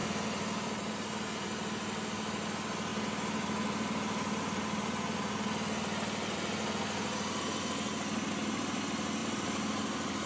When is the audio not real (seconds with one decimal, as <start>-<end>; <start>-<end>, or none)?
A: 9.2-10.3